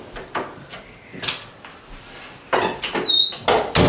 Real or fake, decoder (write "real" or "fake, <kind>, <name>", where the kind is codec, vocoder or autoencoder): real